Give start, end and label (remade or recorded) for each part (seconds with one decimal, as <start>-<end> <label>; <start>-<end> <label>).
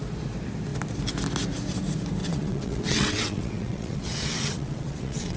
0.0-2.2 recorded; 2.2-5.4 remade